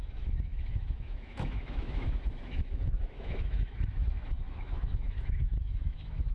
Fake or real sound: fake